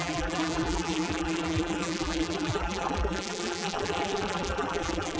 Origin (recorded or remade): remade